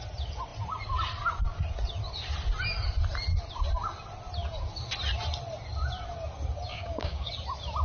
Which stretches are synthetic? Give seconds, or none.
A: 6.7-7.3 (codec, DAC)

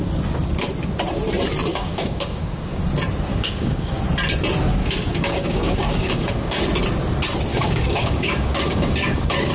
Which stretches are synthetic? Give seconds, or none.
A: 1.7-2.8 (codec, DAC); 3.3-4.0; 4.8-6.6; 7.5-9.5